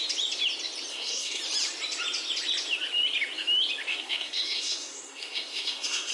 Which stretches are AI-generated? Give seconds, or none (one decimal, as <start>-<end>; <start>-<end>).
0.9-1.4; 3.9-6.1